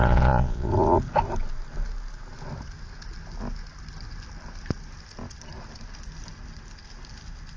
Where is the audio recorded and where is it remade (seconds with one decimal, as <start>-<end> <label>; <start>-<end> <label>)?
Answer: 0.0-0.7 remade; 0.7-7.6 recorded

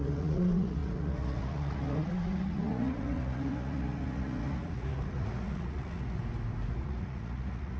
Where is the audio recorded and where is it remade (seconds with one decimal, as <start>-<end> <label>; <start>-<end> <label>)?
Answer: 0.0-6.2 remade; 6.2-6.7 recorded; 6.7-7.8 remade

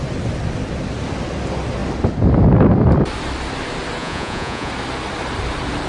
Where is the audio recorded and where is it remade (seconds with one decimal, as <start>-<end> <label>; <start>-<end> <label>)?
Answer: 0.0-4.0 recorded; 4.0-4.7 remade; 4.7-5.9 recorded

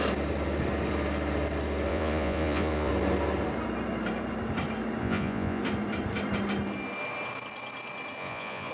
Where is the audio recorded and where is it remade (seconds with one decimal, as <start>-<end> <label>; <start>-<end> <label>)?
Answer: 0.0-1.9 recorded; 1.9-2.9 remade; 2.9-5.0 recorded; 5.0-5.6 remade; 5.6-8.2 recorded; 8.2-8.7 remade

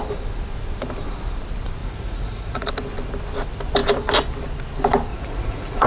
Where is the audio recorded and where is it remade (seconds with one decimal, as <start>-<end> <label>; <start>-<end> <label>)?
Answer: 0.0-1.8 recorded; 1.8-2.7 remade; 2.7-5.1 recorded; 5.1-5.9 remade

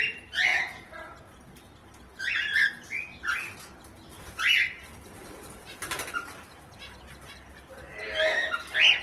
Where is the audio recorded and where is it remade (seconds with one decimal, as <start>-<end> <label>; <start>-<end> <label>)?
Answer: 0.0-0.5 recorded; 0.5-1.4 remade; 1.4-9.0 recorded

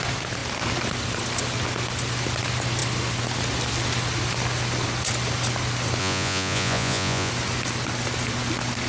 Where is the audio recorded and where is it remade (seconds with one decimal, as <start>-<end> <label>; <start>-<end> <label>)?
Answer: 0.0-6.0 recorded; 6.0-7.3 remade; 7.3-8.9 recorded